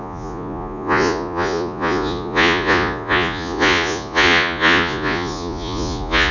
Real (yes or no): no